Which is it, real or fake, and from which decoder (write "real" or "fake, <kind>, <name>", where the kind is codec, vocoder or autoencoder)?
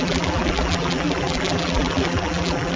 fake, vocoder, BigVGAN v2